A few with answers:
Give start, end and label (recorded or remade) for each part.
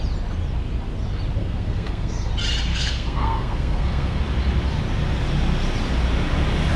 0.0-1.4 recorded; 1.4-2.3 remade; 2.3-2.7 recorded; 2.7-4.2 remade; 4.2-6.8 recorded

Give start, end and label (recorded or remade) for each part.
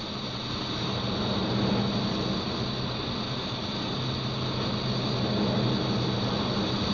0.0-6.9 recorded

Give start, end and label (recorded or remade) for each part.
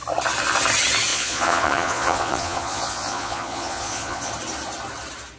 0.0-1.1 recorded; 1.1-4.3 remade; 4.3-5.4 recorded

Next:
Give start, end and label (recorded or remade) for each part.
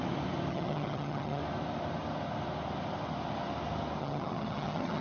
0.0-0.5 recorded; 0.5-1.4 remade; 1.4-4.0 recorded; 4.0-5.0 remade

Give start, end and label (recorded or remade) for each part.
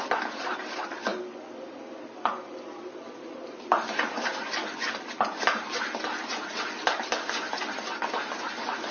0.0-4.6 remade; 4.6-8.9 recorded